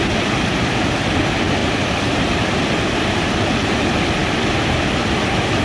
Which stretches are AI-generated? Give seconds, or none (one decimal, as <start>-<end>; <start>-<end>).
1.6-2.9; 4.2-5.0